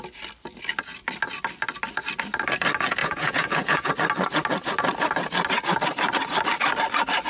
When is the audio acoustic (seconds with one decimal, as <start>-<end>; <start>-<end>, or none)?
0.0-3.0; 3.9-7.3